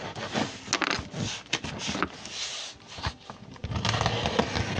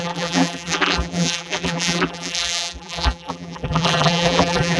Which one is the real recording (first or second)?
first